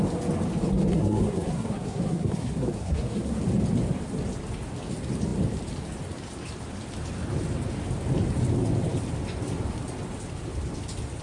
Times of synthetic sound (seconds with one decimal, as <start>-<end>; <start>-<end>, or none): 0.9-3.4